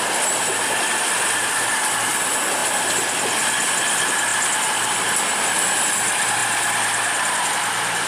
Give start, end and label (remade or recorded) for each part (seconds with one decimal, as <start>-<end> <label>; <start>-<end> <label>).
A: 0.0-4.3 recorded; 4.3-5.4 remade; 5.4-6.4 recorded; 6.4-7.5 remade; 7.5-8.1 recorded